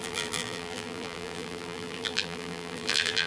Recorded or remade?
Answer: remade